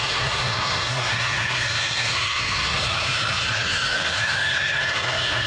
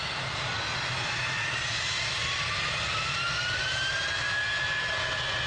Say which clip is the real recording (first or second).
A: second